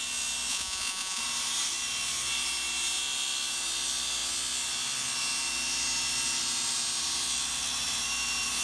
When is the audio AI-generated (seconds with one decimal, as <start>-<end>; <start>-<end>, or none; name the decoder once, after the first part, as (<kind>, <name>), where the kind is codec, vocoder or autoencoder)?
0.5-1.2 (vocoder, Vocos)